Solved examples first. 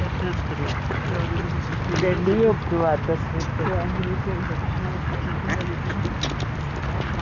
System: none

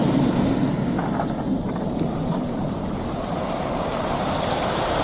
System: none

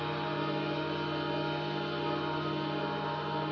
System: none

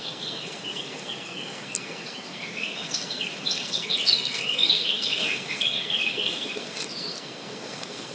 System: codec, SNAC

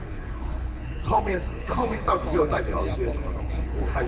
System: codec, HILCodec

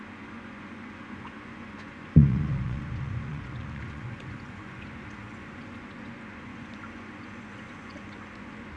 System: vocoder, Vocos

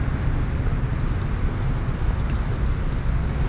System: none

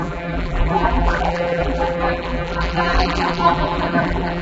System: vocoder, BigVGAN v2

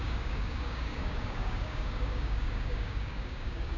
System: codec, DAC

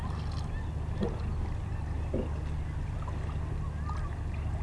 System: none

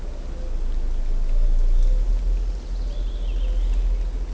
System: none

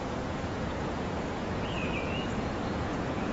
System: vocoder, Vocos